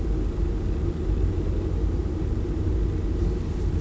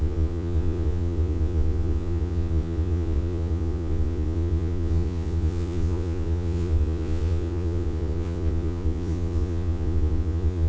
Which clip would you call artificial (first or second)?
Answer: second